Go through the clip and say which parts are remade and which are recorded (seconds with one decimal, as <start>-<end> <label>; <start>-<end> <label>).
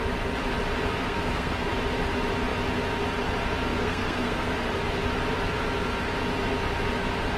0.0-1.0 recorded; 1.0-1.7 remade; 1.7-3.8 recorded; 3.8-4.5 remade; 4.5-7.4 recorded